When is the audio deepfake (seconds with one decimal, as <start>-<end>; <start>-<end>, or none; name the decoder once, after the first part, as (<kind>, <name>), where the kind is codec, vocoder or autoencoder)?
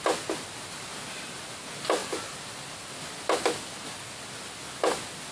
none